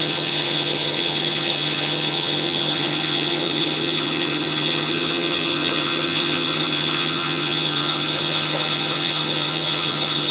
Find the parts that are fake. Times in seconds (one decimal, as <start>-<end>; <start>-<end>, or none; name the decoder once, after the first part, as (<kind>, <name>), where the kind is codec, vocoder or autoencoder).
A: 0.0-10.3 (vocoder, HiFi-GAN)